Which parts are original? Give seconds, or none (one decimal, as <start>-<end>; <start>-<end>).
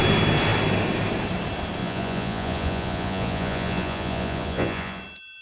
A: 0.0-1.8; 5.0-5.4